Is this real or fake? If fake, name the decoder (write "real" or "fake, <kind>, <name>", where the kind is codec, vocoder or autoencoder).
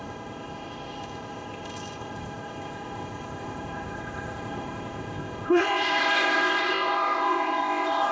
fake, codec, ZipCodec